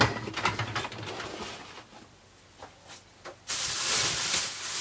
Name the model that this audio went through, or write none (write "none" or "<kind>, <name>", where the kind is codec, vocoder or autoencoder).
none